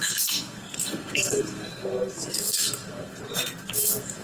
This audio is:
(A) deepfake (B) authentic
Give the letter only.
A